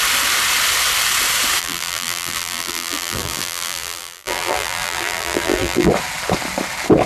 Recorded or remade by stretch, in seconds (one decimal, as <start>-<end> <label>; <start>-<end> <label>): 0.0-1.6 recorded; 1.6-5.9 remade; 5.9-7.1 recorded

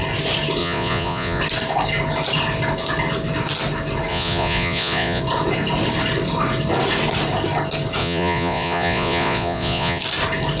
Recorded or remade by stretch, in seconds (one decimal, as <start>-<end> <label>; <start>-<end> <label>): 0.0-0.6 recorded; 0.6-1.4 remade; 1.4-4.1 recorded; 4.1-5.2 remade; 5.2-8.0 recorded; 8.0-10.0 remade; 10.0-10.6 recorded

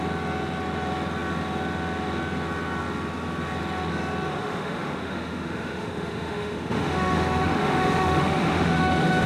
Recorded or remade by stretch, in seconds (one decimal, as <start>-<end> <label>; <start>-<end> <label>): 0.0-4.3 recorded; 4.3-9.3 remade

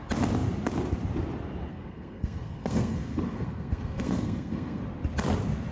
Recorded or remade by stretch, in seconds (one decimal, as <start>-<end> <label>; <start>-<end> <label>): 0.0-1.7 recorded; 1.7-4.8 remade; 4.8-5.7 recorded